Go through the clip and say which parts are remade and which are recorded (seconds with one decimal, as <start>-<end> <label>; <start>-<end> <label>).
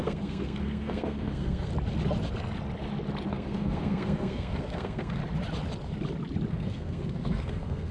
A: 0.0-1.7 remade; 1.7-3.3 recorded; 3.3-5.2 remade; 5.2-6.5 recorded; 6.5-7.9 remade